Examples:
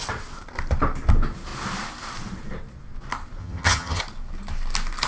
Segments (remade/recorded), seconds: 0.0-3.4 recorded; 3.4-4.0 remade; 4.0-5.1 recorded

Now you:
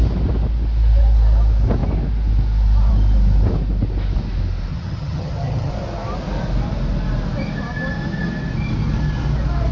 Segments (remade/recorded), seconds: 0.0-4.7 recorded; 4.7-5.7 remade; 5.7-9.7 recorded

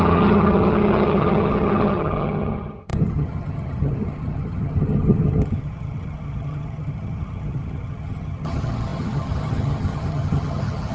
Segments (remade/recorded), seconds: 0.0-10.9 remade

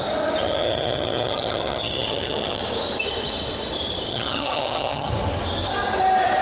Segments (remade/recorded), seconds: 0.0-0.4 recorded; 0.4-2.6 remade; 2.6-4.1 recorded; 4.1-5.1 remade; 5.1-6.4 recorded

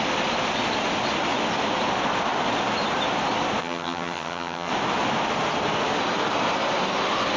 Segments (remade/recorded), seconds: 0.0-3.6 recorded; 3.6-4.7 remade; 4.7-7.4 recorded

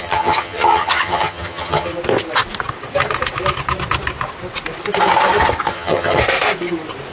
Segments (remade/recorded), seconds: 0.0-1.9 remade; 1.9-5.7 recorded; 5.7-6.2 remade; 6.2-7.1 recorded